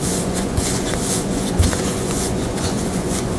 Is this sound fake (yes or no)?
yes